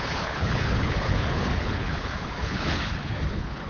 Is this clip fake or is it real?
fake